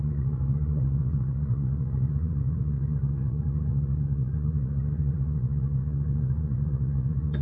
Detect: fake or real fake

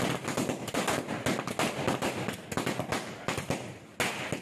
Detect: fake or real real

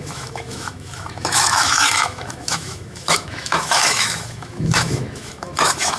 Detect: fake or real fake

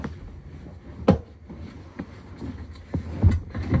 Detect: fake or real real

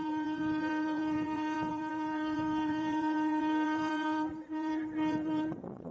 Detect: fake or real fake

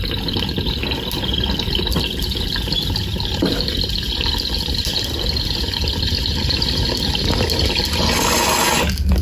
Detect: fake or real real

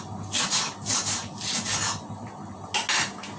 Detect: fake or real real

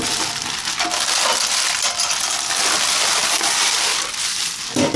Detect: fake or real real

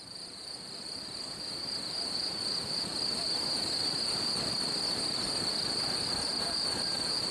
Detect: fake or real fake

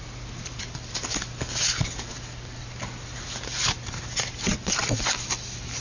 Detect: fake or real fake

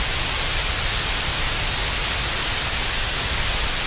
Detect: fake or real real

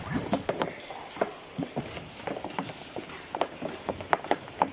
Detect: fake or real real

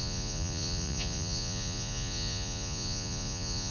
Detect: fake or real fake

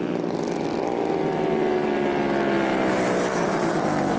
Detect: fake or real real